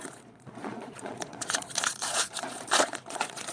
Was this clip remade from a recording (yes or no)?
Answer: yes